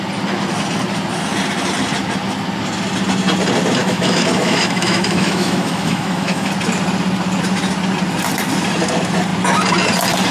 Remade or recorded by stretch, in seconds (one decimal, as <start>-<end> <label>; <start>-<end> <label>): 0.0-3.8 recorded; 3.8-6.5 remade; 6.5-10.3 recorded